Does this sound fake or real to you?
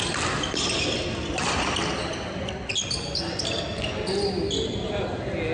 real